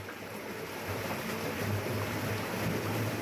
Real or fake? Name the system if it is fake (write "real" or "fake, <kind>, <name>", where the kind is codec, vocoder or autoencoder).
real